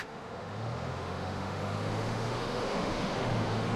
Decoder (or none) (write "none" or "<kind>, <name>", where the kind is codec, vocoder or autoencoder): autoencoder, DAC-VAE